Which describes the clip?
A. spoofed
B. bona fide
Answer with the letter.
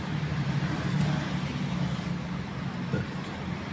B